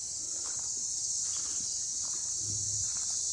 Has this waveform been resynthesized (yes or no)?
no